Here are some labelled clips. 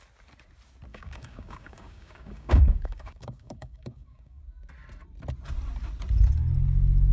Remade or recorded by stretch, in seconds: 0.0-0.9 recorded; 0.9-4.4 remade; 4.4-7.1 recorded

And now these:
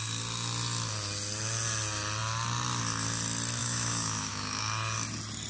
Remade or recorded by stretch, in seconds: 0.0-3.6 recorded; 3.6-4.6 remade; 4.6-5.5 recorded

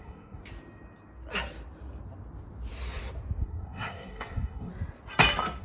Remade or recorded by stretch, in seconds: 0.0-0.4 remade; 0.4-3.4 recorded; 3.4-4.7 remade; 4.7-5.6 recorded